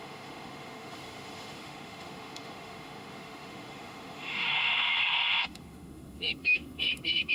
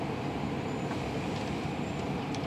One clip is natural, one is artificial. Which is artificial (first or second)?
first